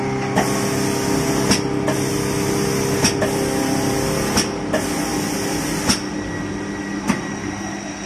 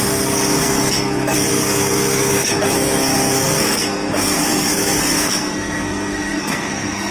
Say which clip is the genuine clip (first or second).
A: first